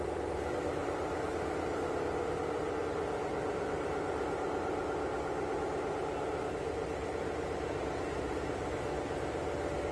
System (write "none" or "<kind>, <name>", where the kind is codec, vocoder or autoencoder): none